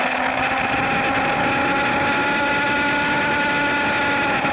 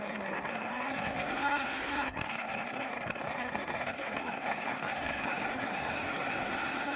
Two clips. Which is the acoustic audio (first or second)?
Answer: first